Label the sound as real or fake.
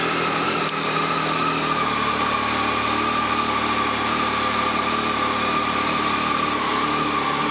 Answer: real